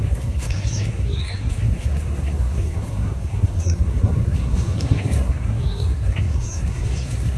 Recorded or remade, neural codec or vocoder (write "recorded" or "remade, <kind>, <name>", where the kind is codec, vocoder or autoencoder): remade, codec, SNAC